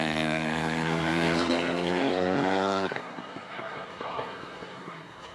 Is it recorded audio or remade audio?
remade